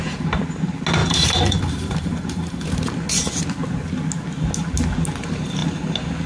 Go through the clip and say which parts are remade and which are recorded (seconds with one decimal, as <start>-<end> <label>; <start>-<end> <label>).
0.0-1.0 recorded; 1.0-2.7 remade; 2.7-6.3 recorded